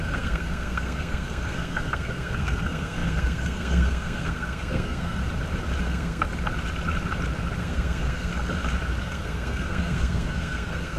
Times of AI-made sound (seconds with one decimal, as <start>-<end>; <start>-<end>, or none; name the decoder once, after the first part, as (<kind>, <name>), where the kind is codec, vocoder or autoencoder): 0.0-5.2 (codec, SNAC); 5.8-6.3; 7.6-8.3; 9.0-11.0